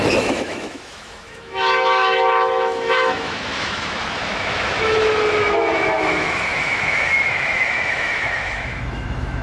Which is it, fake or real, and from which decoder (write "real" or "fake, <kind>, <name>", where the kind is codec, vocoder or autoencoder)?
fake, autoencoder, DAC-VAE